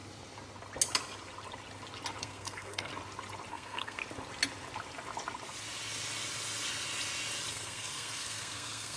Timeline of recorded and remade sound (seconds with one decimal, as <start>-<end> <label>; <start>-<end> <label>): 0.0-2.2 recorded; 2.2-2.9 remade; 2.9-3.5 recorded; 3.5-4.0 remade; 4.0-7.5 recorded; 7.5-9.0 remade